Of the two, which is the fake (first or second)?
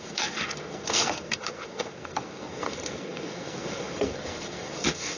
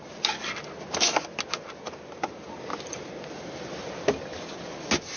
first